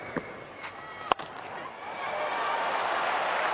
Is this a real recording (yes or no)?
yes